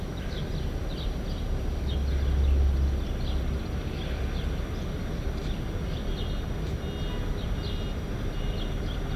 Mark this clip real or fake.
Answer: real